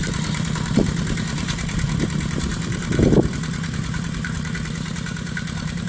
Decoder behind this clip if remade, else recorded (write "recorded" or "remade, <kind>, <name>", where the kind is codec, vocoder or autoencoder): remade, vocoder, BigVGAN v2